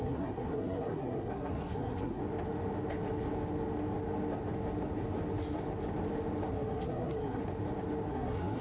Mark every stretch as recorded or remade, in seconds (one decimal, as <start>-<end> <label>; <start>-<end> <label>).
0.0-2.2 remade; 2.2-6.5 recorded; 6.5-7.4 remade; 7.4-8.1 recorded; 8.1-8.6 remade